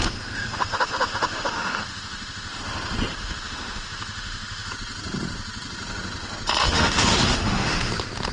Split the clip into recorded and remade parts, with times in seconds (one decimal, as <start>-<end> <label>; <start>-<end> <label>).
0.0-2.6 remade; 2.6-3.1 recorded; 3.1-4.7 remade; 4.7-6.6 recorded; 6.6-7.9 remade; 7.9-8.3 recorded